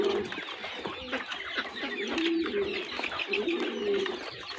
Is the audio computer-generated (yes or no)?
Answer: no